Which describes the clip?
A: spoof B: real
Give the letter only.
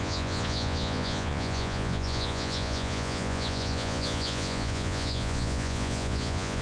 A